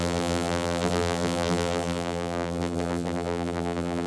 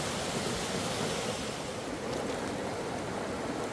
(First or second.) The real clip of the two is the second